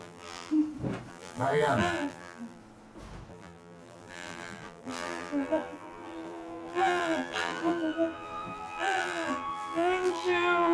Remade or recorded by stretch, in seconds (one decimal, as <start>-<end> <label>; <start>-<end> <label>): 0.0-0.5 remade; 0.5-1.1 recorded; 1.1-2.6 remade; 2.6-3.3 recorded; 3.3-10.7 remade